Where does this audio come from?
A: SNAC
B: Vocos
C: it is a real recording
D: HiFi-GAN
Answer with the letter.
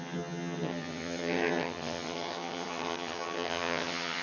D